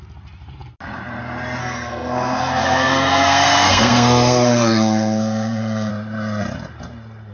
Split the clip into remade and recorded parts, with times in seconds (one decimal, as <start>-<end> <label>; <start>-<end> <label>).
0.0-1.6 recorded; 1.6-5.9 remade; 5.9-7.3 recorded